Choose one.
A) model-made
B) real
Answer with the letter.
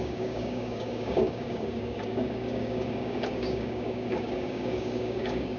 A